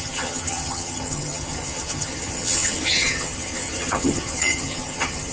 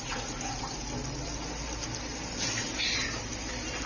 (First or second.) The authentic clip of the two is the second